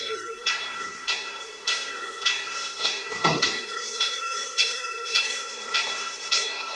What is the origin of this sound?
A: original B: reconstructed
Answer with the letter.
B